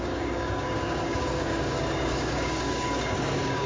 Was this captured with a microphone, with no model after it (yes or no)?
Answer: no